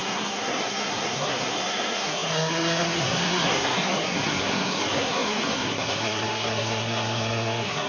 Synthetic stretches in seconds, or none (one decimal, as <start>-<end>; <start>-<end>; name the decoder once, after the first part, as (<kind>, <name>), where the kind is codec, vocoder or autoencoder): 0.0-7.9 (codec, SNAC)